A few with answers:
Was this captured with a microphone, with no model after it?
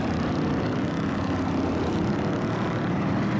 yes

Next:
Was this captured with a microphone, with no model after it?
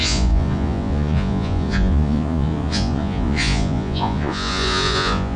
no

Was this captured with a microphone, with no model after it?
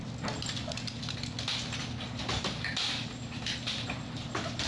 yes